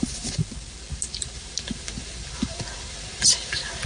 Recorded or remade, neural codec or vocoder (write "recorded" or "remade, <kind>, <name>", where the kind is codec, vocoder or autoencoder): recorded